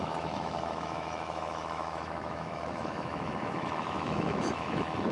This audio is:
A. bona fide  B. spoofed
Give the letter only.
B